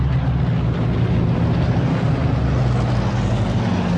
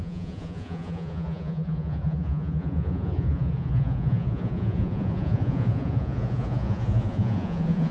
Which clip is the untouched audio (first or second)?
first